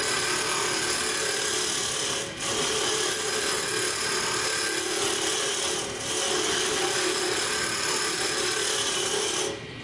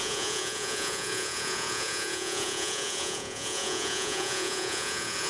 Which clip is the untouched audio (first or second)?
first